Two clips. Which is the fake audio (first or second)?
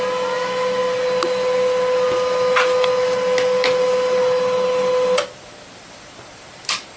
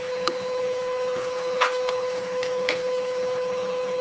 second